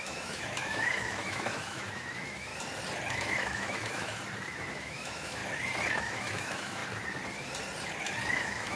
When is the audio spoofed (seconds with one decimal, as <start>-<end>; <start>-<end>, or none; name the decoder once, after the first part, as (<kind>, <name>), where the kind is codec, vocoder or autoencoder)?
0.0-2.5 (autoencoder, DAC-VAE); 3.1-4.1; 4.7-5.4; 6.0-6.8; 8.3-8.8